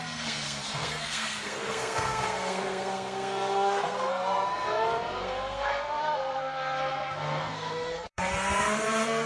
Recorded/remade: remade